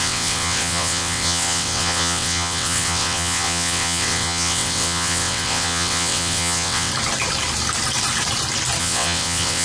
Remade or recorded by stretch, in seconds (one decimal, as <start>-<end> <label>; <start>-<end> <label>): 0.0-6.9 remade; 6.9-8.8 recorded; 8.8-9.6 remade